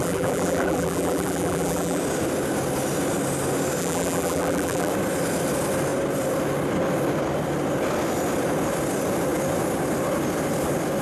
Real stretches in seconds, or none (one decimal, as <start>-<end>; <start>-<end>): 2.0-3.8; 4.9-11.0